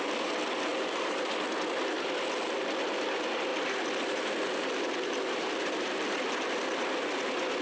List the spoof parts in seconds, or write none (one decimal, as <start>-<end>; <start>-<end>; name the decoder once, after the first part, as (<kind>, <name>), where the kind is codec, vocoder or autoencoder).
0.7-1.3 (vocoder, BigVGAN v2)

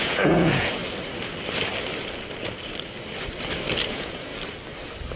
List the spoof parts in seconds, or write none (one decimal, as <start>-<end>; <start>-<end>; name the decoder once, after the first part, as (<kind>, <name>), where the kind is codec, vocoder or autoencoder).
0.0-0.8 (vocoder, Vocos); 3.9-4.3

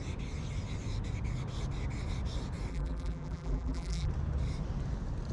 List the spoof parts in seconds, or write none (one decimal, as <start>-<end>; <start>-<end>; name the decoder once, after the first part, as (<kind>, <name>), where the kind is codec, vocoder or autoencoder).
2.7-4.1 (vocoder, BigVGAN v2)